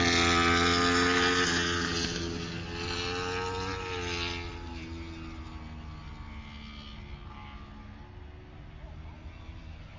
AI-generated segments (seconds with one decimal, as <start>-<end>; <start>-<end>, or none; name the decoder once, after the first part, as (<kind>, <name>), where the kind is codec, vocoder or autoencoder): none